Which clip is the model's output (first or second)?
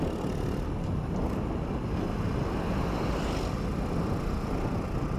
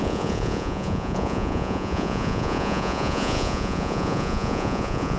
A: second